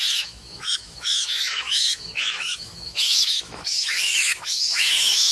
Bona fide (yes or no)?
no